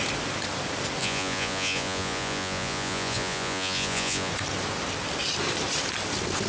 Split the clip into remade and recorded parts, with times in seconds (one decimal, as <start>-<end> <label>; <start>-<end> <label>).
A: 0.0-1.0 recorded; 1.0-4.3 remade; 4.3-6.5 recorded

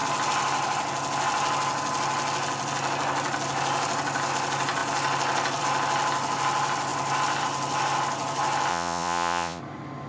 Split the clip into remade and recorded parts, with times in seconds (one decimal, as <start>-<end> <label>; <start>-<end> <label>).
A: 0.0-8.7 recorded; 8.7-9.6 remade; 9.6-10.1 recorded

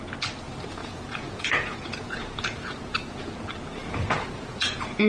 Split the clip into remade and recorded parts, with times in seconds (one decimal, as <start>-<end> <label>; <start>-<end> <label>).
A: 0.0-0.8 recorded; 0.8-3.4 remade; 3.4-3.8 recorded; 3.8-5.1 remade